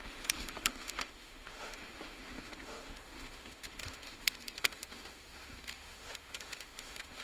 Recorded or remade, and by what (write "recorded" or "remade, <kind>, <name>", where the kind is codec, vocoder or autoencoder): remade, autoencoder, DAC-VAE